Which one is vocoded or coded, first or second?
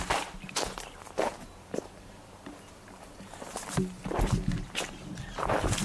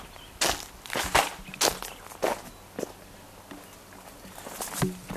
first